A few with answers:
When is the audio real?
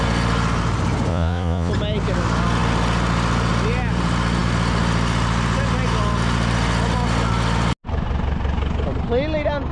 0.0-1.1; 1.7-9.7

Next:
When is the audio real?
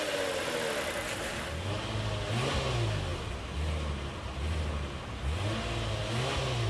0.0-6.7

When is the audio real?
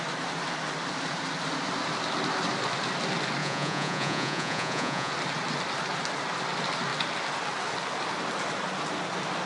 0.0-3.4; 5.1-9.5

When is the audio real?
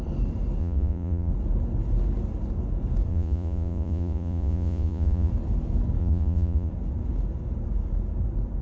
0.0-0.6; 1.3-3.1; 5.3-6.0; 6.7-8.6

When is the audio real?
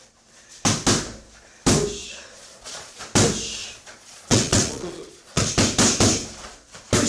0.0-2.0; 3.0-3.6; 5.5-7.1